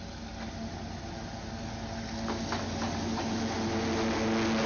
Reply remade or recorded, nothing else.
recorded